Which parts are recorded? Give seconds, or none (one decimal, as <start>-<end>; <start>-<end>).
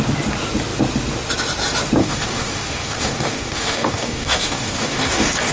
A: 0.0-2.0